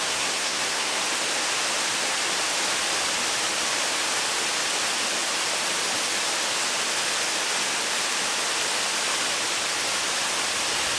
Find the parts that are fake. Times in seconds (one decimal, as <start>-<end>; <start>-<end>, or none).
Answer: 0.0-1.0